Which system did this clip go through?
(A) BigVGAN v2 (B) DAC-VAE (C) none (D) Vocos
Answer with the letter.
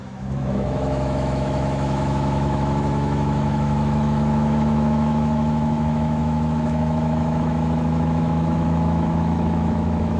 B